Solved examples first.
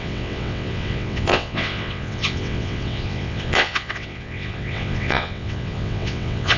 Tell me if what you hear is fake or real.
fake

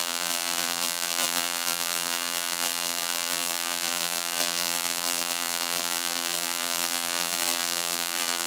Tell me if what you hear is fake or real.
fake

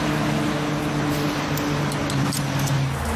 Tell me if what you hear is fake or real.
real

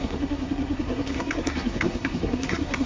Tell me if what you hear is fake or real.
fake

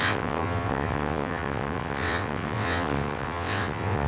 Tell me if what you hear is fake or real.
fake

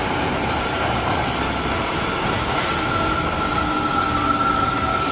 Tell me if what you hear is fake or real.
real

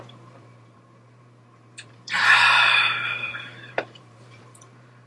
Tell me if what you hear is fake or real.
fake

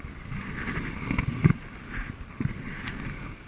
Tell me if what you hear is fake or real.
real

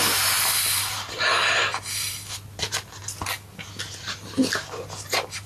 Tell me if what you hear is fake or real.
real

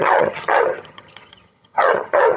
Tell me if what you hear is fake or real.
fake